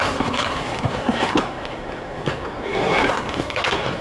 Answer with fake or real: fake